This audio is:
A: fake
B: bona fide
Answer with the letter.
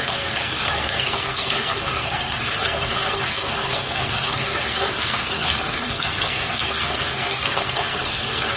A